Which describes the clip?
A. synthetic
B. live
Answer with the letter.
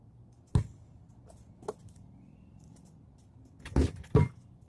B